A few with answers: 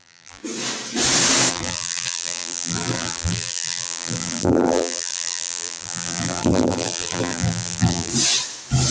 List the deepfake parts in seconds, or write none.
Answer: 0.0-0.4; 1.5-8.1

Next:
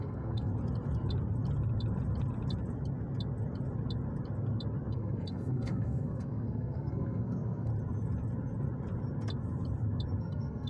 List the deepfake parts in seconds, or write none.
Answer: 0.0-0.5; 4.9-7.7; 10.2-10.7

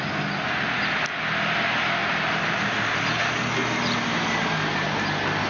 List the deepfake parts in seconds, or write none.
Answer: 2.0-3.2

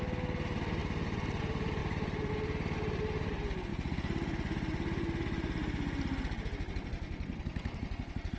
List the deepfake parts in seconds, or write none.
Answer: none